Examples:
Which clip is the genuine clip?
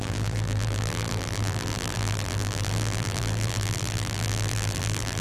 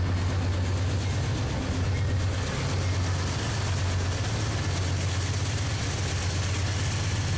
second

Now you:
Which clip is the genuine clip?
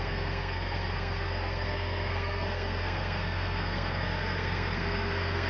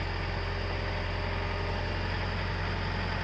second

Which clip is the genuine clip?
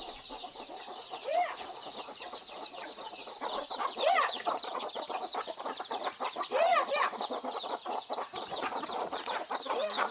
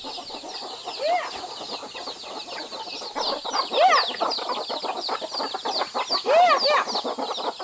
second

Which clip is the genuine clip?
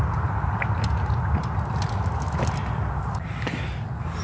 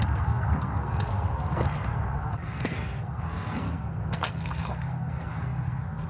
first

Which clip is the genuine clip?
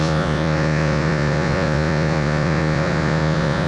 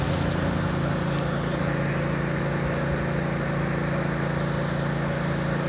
second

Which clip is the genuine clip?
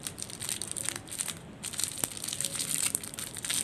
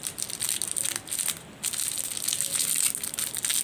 second